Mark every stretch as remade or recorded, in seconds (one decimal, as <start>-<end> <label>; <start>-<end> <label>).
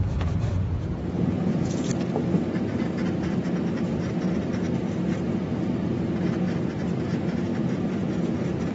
0.0-1.9 remade; 1.9-7.0 recorded; 7.0-7.5 remade; 7.5-8.7 recorded